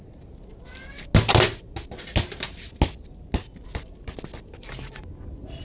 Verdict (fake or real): real